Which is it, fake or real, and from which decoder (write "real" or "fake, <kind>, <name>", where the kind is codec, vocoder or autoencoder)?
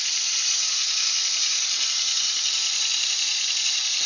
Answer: real